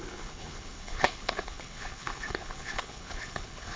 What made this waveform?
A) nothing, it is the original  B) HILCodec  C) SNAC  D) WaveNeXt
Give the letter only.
B